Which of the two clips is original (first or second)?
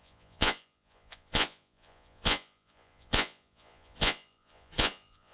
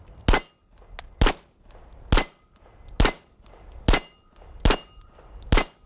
second